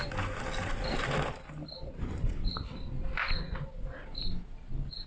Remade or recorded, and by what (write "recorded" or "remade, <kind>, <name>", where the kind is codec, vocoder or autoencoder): recorded